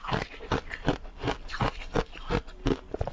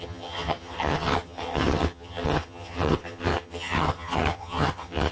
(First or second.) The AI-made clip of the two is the second